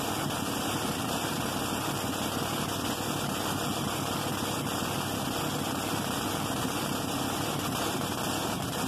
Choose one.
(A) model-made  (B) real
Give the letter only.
B